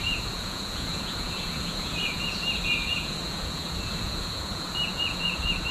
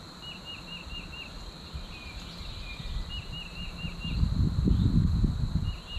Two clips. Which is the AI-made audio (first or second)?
first